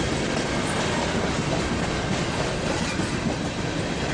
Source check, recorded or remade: recorded